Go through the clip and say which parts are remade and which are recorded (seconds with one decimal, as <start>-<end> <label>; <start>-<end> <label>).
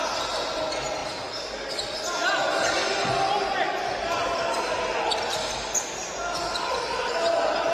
0.0-7.7 recorded